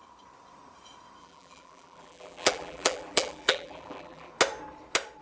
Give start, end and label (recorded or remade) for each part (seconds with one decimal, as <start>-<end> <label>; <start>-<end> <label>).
0.0-1.2 recorded; 1.2-4.3 remade; 4.3-5.2 recorded